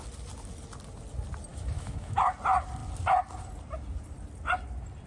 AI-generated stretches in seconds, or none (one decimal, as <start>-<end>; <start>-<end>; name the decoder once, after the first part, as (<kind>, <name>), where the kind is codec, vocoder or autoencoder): 1.5-2.2 (autoencoder, DAC-VAE)